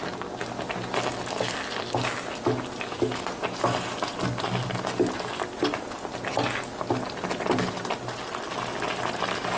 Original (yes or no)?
yes